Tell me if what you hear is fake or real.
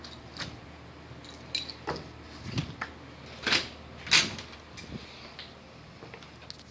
real